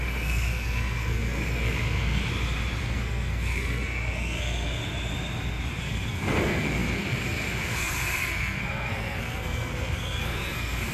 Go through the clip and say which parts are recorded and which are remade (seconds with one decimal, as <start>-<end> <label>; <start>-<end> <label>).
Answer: 0.0-2.3 remade; 2.3-2.8 recorded; 2.8-4.8 remade; 4.8-5.7 recorded; 5.7-10.9 remade